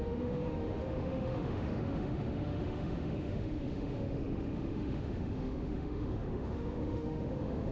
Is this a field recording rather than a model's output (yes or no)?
no